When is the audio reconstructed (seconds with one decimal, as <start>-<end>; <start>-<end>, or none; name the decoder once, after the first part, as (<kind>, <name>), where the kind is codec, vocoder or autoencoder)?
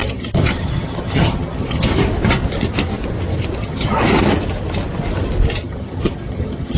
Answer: 0.0-1.9 (vocoder, HiFi-GAN); 3.6-4.0; 5.6-6.8